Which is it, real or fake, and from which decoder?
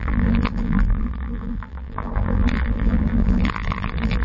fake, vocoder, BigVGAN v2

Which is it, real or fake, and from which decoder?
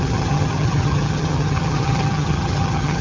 fake, vocoder, HiFi-GAN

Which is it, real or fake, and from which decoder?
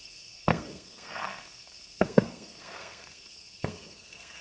fake, codec, SNAC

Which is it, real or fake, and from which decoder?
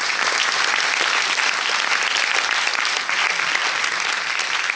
real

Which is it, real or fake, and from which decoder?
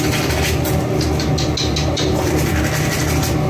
real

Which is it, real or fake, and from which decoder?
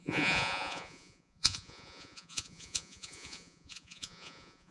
fake, vocoder, Vocos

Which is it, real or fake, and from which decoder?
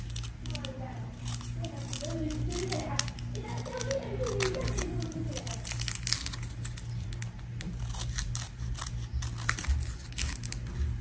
real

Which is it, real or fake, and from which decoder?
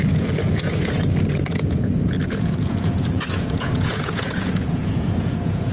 fake, vocoder, Vocos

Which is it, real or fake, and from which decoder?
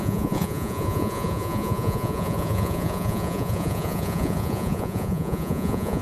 fake, vocoder, Vocos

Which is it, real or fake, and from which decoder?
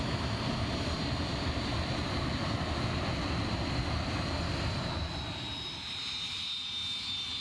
real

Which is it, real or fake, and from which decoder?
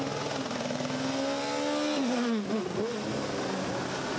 real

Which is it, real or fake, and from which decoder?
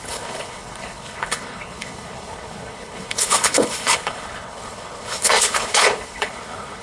fake, codec, HILCodec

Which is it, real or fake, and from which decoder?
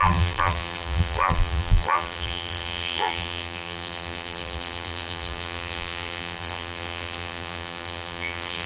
fake, vocoder, BigVGAN v2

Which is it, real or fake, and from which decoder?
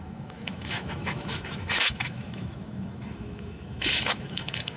fake, autoencoder, DAC-VAE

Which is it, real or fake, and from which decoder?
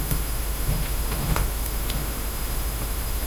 fake, autoencoder, DAC-VAE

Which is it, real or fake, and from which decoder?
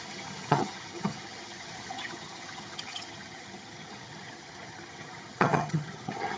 fake, vocoder, HiFi-GAN